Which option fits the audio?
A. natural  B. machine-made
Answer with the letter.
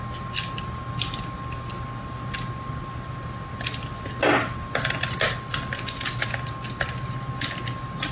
A